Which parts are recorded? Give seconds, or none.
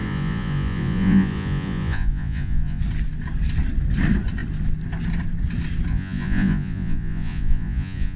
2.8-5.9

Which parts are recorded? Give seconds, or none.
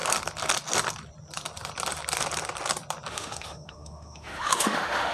0.0-3.1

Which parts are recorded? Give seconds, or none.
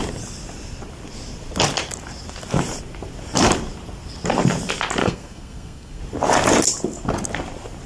0.0-5.0; 6.0-7.9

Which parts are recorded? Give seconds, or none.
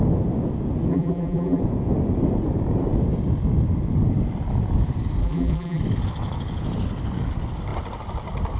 0.0-0.9; 1.6-5.2; 5.8-8.6